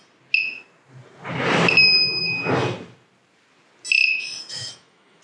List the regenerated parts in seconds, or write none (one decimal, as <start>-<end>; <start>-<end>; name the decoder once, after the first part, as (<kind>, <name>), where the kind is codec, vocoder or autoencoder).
4.1-5.2 (autoencoder, DAC-VAE)